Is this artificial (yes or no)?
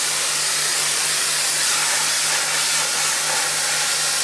no